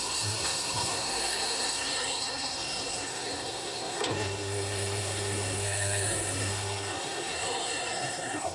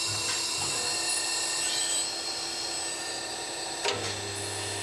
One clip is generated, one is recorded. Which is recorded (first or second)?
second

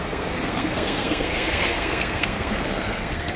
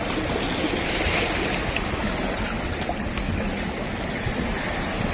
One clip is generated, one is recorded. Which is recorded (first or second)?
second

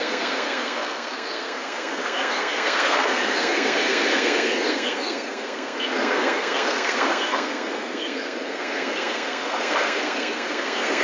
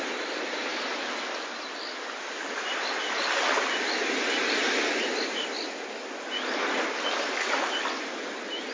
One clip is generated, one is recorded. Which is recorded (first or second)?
second